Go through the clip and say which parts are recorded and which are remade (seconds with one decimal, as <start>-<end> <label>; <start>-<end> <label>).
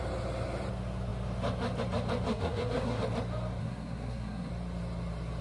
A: 0.0-2.3 recorded; 2.3-3.0 remade; 3.0-3.6 recorded; 3.6-4.5 remade; 4.5-5.4 recorded